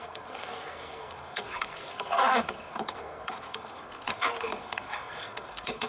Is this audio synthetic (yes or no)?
yes